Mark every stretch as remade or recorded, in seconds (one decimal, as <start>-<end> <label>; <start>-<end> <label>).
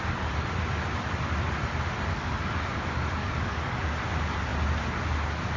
0.0-2.1 recorded; 2.1-2.8 remade; 2.8-3.2 recorded; 3.2-3.8 remade; 3.8-5.6 recorded